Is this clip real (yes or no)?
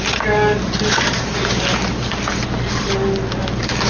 yes